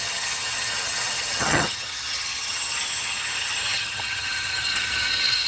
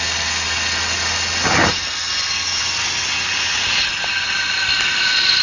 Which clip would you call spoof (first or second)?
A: first